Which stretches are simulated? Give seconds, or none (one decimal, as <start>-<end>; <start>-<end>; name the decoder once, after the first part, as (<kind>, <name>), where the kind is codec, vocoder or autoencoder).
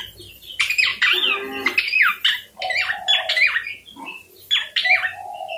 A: none